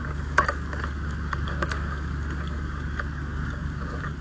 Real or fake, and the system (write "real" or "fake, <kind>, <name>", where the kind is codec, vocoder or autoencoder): fake, codec, DAC